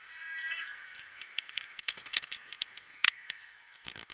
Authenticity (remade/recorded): remade